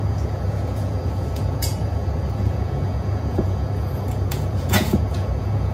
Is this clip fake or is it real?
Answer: fake